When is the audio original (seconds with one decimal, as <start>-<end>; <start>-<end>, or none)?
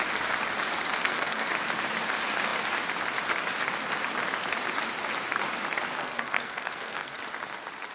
0.0-1.0; 1.5-6.0; 7.2-7.9